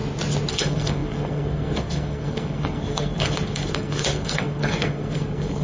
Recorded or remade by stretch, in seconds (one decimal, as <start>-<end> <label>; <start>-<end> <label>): 0.0-0.5 recorded; 0.5-5.6 remade